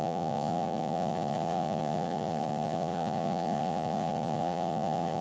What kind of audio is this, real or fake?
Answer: fake